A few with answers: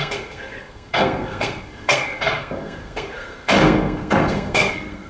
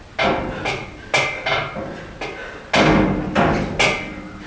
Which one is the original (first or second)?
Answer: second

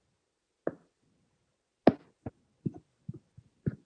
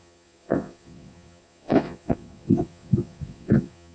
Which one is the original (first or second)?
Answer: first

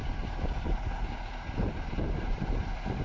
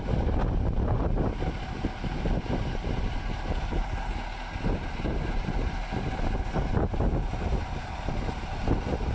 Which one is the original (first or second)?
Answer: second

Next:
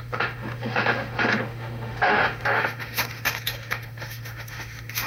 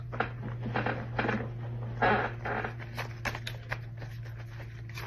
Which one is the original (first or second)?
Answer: second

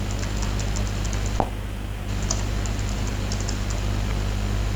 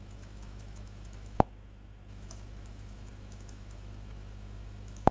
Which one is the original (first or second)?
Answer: first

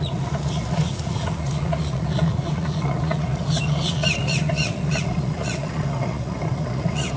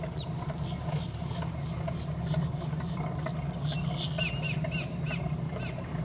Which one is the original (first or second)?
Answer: second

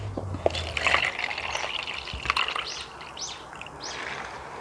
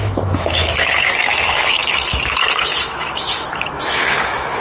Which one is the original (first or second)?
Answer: first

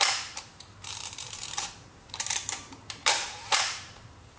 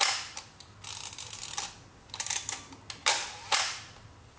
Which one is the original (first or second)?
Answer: second